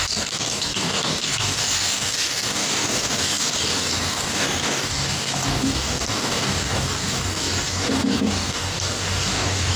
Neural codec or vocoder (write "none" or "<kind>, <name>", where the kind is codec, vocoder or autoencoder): codec, DAC